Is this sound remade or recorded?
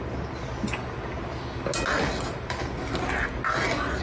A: recorded